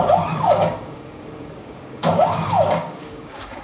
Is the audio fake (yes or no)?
yes